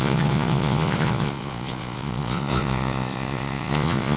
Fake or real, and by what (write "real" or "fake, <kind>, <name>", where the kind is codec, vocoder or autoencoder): fake, vocoder, Vocos